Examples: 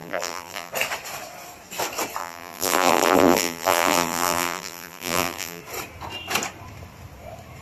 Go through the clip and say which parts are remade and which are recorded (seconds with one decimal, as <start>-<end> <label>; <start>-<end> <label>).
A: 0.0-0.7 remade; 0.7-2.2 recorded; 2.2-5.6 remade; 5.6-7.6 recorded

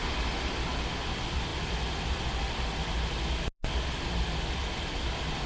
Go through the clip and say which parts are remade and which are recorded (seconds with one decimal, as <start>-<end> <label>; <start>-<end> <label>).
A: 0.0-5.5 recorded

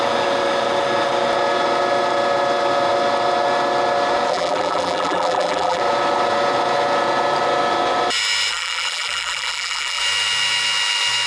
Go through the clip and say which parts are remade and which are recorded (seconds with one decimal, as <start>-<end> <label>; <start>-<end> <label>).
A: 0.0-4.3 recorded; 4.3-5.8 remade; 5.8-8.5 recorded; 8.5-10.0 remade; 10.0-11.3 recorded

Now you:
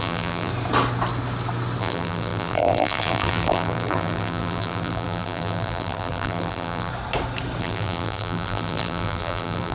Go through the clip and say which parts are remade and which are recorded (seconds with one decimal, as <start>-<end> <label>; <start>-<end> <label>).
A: 0.0-0.5 remade; 0.5-1.8 recorded; 1.8-6.9 remade; 6.9-7.6 recorded; 7.6-9.7 remade